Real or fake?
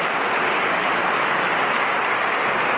real